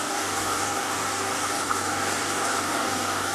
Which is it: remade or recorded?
remade